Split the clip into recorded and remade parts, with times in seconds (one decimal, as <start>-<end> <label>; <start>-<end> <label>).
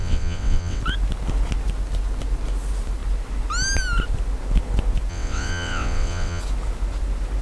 0.0-0.8 remade; 0.8-5.1 recorded; 5.1-6.4 remade; 6.4-7.4 recorded